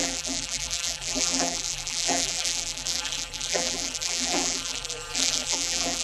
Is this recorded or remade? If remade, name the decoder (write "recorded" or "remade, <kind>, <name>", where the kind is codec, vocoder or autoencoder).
remade, vocoder, BigVGAN v2